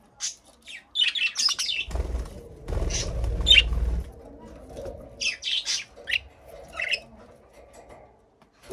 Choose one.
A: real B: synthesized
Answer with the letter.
A